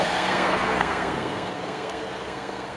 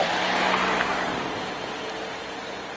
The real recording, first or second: second